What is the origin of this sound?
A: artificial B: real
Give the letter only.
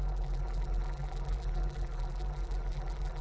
A